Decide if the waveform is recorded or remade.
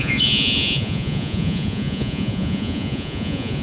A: remade